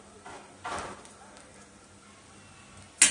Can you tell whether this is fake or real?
real